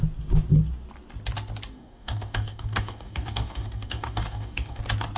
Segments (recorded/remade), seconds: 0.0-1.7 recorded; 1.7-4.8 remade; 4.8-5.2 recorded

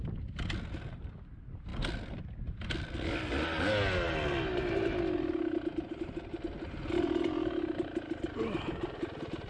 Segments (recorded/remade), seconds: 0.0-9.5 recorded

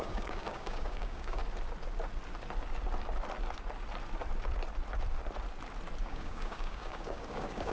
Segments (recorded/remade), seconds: 0.0-1.4 remade; 1.4-6.0 recorded; 6.0-7.7 remade

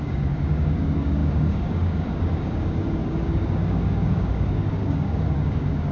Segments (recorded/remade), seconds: 0.0-5.9 remade

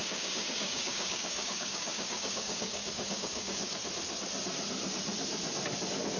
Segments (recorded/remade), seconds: 0.0-3.7 remade; 3.7-6.2 recorded